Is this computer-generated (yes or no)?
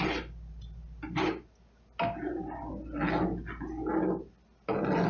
no